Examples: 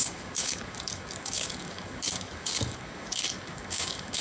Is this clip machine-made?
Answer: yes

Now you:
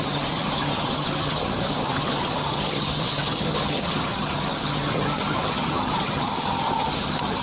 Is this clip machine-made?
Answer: yes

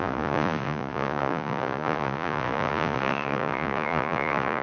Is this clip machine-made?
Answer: yes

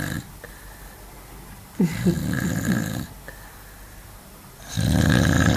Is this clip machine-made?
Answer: no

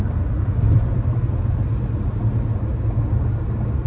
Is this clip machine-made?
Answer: no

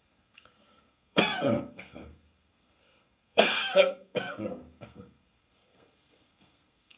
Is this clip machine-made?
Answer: yes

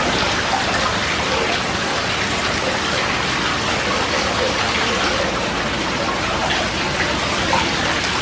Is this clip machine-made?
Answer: no